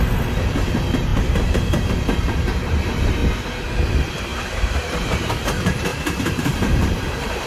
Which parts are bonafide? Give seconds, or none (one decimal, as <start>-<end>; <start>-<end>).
3.2-3.9; 5.9-6.5